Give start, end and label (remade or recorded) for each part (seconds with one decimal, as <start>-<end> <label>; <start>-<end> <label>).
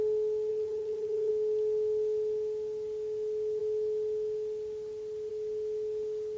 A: 0.0-0.5 recorded; 0.5-1.3 remade; 1.3-6.4 recorded